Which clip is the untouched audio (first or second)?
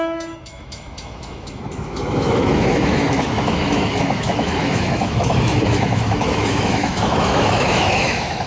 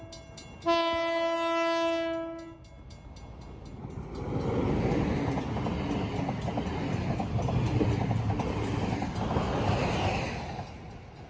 second